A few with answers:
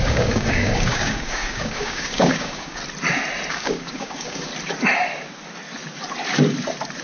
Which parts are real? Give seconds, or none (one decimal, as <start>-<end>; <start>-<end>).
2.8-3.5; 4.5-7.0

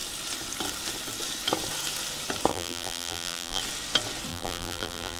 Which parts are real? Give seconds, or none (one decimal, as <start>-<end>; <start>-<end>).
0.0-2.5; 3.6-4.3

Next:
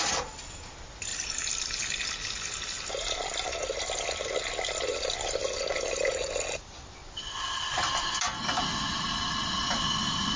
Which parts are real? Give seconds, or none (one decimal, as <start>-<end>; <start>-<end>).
0.0-10.4

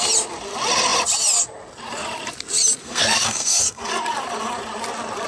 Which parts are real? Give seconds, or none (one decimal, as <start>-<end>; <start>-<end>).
0.0-2.8; 3.9-5.3